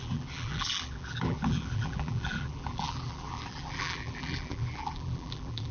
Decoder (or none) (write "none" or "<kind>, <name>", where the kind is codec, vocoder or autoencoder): vocoder, BigVGAN v2